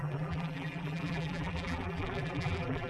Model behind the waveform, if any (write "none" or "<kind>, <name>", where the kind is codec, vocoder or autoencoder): vocoder, BigVGAN v2